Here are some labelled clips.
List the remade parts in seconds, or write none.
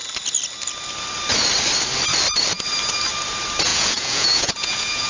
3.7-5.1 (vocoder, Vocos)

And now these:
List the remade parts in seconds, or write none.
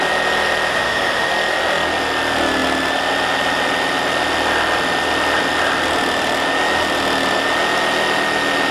0.7-1.3 (autoencoder, DAC-VAE)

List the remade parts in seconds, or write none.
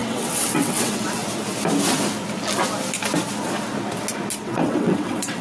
0.0-1.2 (vocoder, WaveNeXt); 4.4-5.4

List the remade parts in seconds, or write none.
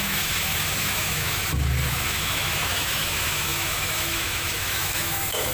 0.0-1.4 (autoencoder, DAC-VAE); 1.9-5.5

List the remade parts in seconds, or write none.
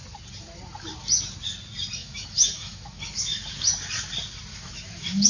2.0-3.7 (autoencoder, DAC-VAE); 4.5-5.3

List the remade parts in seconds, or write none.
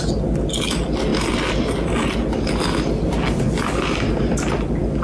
none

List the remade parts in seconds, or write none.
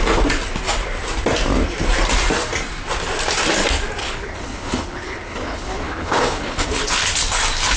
4.0-7.0 (codec, HILCodec)